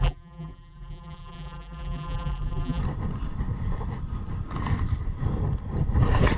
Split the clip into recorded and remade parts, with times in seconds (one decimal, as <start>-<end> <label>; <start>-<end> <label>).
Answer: 0.0-2.8 remade; 2.8-6.4 recorded